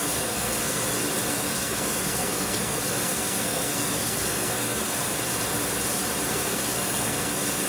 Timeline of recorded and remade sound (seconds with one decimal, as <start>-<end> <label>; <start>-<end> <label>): 0.0-0.8 remade; 0.8-1.3 recorded; 1.3-5.1 remade; 5.1-6.3 recorded; 6.3-7.7 remade